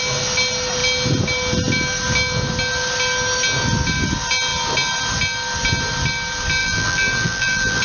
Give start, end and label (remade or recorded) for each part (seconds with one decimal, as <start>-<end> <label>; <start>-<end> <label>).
0.0-6.6 recorded; 6.6-7.8 remade